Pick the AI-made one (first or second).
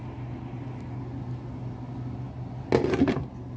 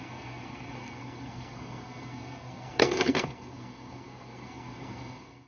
second